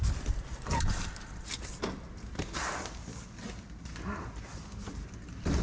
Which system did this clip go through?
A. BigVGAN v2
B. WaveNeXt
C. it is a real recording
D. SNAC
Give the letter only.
C